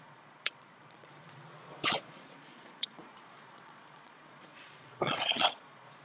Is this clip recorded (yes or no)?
no